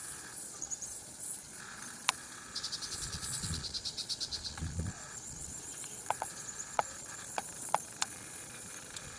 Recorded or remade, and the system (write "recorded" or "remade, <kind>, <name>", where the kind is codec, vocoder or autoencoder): remade, vocoder, Vocos